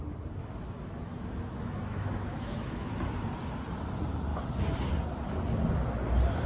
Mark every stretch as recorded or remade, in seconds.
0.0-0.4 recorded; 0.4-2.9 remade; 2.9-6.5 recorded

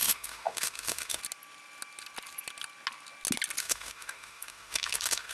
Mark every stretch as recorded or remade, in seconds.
0.0-1.2 remade; 1.2-3.6 recorded; 3.6-5.3 remade

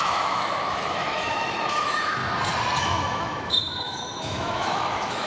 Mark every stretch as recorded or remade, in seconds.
0.0-2.2 remade; 2.2-2.8 recorded; 2.8-5.3 remade

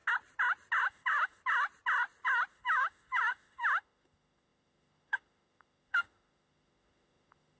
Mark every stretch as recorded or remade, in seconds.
0.0-0.8 recorded; 0.8-1.4 remade; 1.4-2.5 recorded; 2.5-7.6 remade

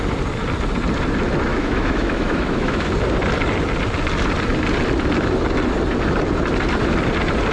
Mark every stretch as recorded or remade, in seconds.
0.0-1.5 recorded; 1.5-2.9 remade; 2.9-7.5 recorded

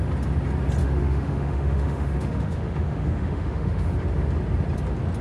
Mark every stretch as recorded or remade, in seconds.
0.0-0.8 recorded; 0.8-3.9 remade; 3.9-5.2 recorded

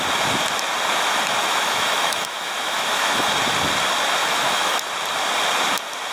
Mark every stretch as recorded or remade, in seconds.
0.0-1.4 recorded; 1.4-3.3 remade; 3.3-4.2 recorded; 4.2-4.9 remade; 4.9-6.1 recorded

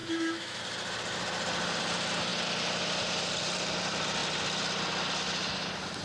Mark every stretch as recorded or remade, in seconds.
0.0-0.6 remade; 0.6-6.0 recorded